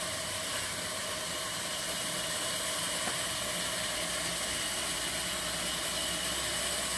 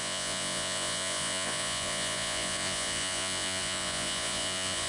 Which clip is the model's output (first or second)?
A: second